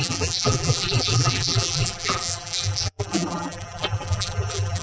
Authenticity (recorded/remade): remade